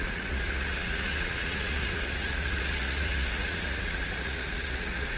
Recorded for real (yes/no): no